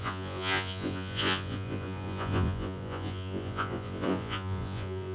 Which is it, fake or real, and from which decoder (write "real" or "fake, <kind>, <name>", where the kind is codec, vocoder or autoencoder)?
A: fake, vocoder, Vocos